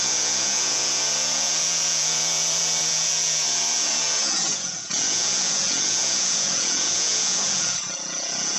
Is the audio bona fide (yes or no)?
no